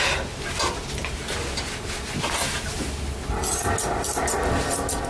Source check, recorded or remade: recorded